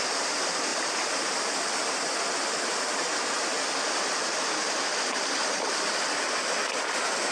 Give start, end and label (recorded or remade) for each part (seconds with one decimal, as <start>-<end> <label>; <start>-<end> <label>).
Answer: 0.0-7.3 recorded